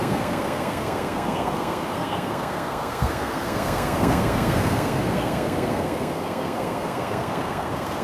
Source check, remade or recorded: remade